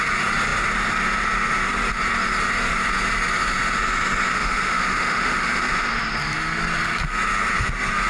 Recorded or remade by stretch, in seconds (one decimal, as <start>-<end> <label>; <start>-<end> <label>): 0.0-4.3 recorded; 4.3-5.9 remade; 5.9-8.1 recorded

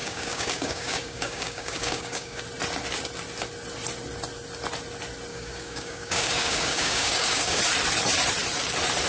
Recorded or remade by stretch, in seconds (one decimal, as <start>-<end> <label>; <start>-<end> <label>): 0.0-2.4 remade; 2.4-5.3 recorded; 5.3-7.6 remade; 7.6-9.1 recorded

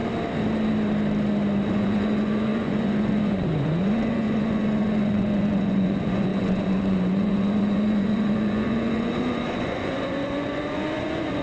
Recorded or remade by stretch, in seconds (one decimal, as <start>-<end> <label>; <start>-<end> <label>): 0.0-1.7 recorded; 1.7-11.4 remade